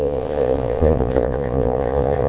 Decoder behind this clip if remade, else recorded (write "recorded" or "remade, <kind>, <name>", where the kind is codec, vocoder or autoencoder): remade, vocoder, Vocos